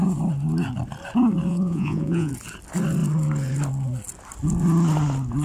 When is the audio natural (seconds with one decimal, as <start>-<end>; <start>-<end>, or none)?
0.0-1.5; 2.3-5.4